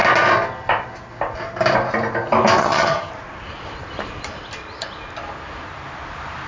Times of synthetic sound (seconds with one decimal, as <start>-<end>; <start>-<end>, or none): 2.6-3.1